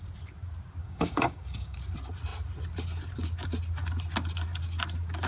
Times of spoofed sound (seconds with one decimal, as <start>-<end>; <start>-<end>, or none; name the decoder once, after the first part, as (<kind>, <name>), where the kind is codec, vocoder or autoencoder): 0.8-1.8 (codec, DAC)